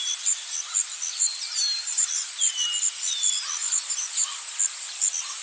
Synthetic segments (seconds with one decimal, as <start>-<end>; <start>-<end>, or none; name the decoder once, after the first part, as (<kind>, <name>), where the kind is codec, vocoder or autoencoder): 1.3-2.1 (vocoder, BigVGAN v2); 3.6-4.4